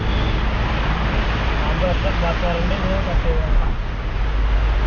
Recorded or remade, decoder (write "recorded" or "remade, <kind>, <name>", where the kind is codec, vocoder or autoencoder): recorded